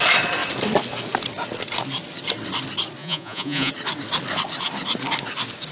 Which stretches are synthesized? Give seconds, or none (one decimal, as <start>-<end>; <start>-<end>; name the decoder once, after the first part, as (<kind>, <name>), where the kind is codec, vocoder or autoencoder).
3.0-3.7 (vocoder, Vocos)